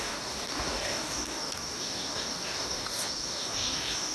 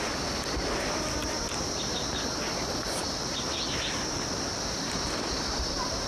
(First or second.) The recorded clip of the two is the second